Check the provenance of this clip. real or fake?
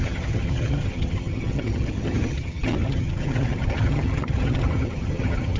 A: fake